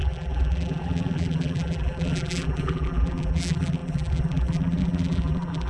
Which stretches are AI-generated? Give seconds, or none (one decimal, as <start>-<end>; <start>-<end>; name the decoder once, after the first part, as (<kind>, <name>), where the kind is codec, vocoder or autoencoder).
0.0-5.7 (vocoder, BigVGAN v2)